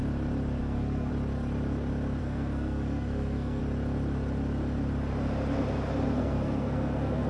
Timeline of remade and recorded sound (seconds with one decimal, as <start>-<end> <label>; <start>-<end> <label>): 0.0-0.6 recorded; 0.6-1.1 remade; 1.1-2.2 recorded; 2.2-3.6 remade; 3.6-6.2 recorded; 6.2-7.3 remade